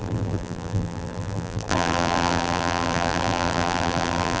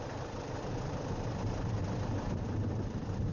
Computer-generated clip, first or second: first